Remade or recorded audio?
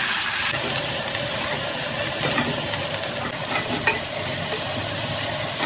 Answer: recorded